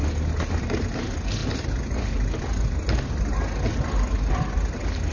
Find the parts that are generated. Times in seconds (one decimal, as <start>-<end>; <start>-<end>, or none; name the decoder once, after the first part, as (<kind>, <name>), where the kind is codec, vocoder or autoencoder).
none